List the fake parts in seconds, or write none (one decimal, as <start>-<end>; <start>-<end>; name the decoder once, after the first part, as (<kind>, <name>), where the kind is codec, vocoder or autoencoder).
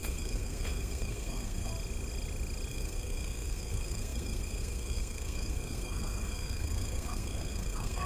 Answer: 0.0-1.7 (codec, SNAC); 2.7-8.1